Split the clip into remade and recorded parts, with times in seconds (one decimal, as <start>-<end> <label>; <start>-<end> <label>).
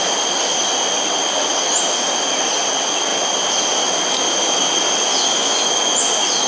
0.0-5.4 recorded; 5.4-6.1 remade; 6.1-6.5 recorded